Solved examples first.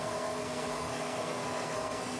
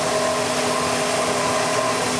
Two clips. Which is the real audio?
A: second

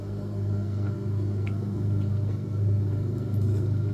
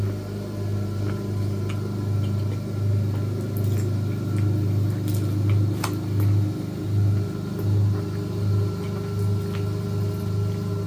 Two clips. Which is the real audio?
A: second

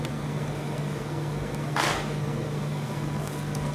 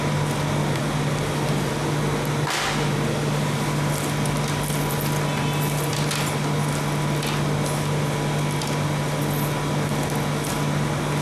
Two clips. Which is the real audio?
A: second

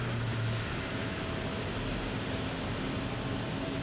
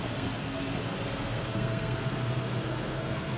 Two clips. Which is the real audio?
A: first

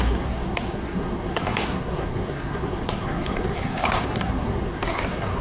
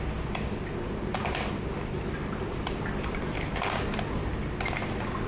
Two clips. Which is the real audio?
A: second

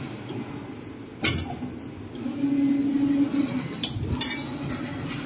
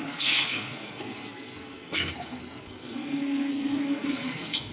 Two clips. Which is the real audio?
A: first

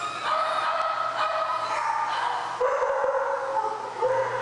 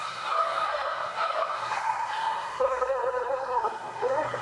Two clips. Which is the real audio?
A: first